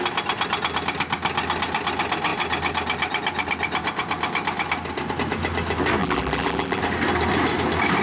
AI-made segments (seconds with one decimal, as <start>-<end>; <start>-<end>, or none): 6.0-6.8